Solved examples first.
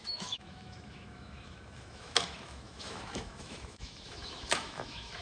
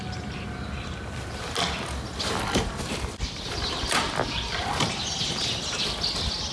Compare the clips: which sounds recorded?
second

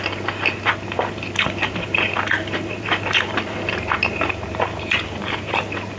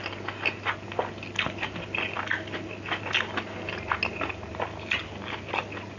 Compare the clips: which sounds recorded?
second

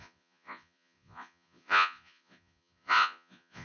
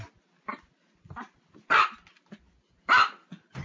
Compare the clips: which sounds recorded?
second